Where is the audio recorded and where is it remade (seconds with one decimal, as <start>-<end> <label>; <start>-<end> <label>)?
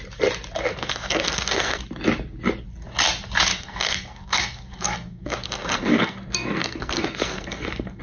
0.0-0.7 recorded; 0.7-1.8 remade; 1.8-3.5 recorded; 3.5-8.0 remade